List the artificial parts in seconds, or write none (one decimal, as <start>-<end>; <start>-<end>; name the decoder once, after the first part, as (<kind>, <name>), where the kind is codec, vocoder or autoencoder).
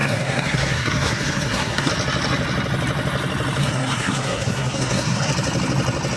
0.0-1.9 (codec, SNAC); 3.6-5.3